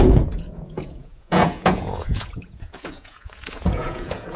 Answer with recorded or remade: remade